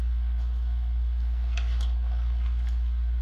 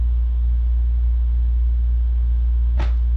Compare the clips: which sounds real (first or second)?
second